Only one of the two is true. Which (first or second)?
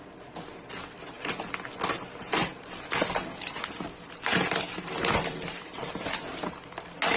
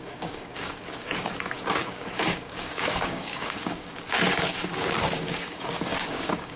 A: first